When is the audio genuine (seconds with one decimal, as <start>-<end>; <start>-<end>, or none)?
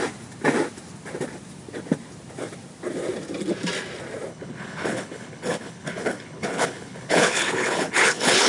0.0-4.3